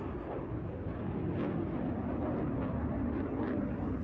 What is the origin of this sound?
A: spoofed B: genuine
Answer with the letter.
B